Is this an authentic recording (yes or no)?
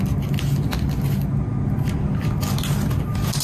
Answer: yes